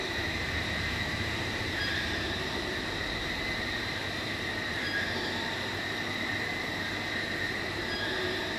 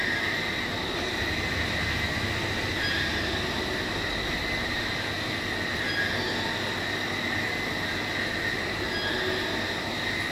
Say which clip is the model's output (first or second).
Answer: first